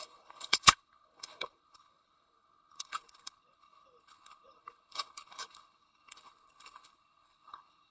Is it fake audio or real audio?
fake